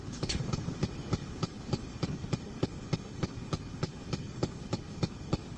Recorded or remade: remade